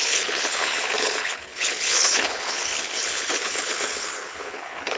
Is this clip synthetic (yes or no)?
yes